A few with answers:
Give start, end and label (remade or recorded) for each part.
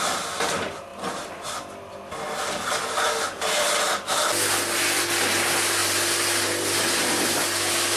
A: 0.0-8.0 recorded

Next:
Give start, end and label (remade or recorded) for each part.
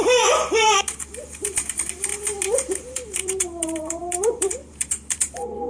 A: 0.0-1.1 recorded; 1.1-5.7 remade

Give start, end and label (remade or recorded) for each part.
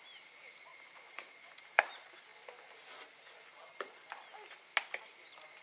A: 0.0-0.7 recorded; 0.7-1.9 remade; 1.9-5.6 recorded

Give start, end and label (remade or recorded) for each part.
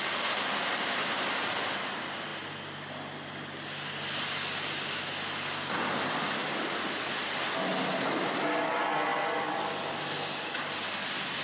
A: 0.0-11.4 recorded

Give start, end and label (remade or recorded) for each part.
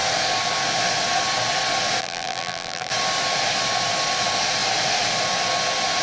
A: 0.0-2.0 recorded; 2.0-2.9 remade; 2.9-6.0 recorded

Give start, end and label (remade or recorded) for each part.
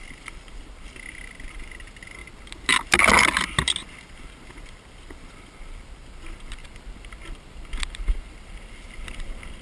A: 0.0-2.2 remade; 2.2-4.1 recorded; 4.1-6.6 remade; 6.6-8.3 recorded; 8.3-9.6 remade